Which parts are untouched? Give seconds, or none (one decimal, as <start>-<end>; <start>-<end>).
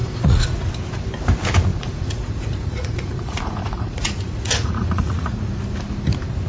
0.7-1.7; 5.6-6.5